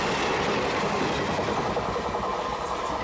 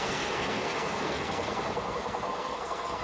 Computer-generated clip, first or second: second